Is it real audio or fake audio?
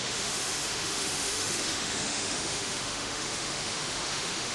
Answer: fake